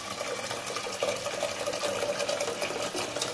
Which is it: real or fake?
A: real